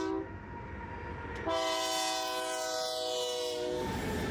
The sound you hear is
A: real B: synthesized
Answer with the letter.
A